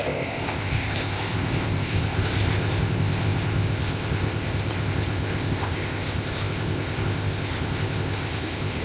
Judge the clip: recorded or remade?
remade